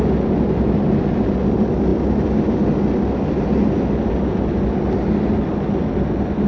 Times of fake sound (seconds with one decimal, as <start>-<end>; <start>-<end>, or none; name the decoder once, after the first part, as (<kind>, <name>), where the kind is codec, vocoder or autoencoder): none